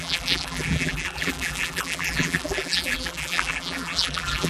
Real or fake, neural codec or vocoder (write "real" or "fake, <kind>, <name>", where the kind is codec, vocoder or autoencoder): fake, vocoder, BigVGAN v2